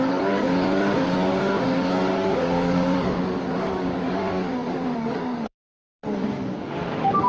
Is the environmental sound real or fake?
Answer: fake